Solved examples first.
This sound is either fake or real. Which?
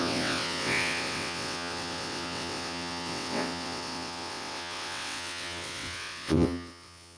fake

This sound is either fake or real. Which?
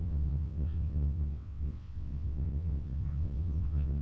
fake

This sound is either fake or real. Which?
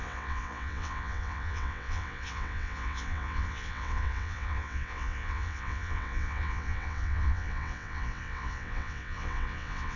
fake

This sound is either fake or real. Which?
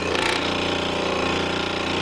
real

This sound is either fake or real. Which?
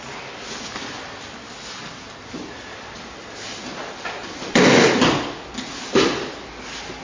real